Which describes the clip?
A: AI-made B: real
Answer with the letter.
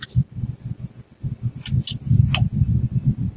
B